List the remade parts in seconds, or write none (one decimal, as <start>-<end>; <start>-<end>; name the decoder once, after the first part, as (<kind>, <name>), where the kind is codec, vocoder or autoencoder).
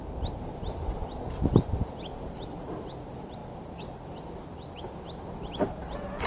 none